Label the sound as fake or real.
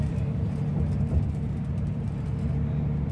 fake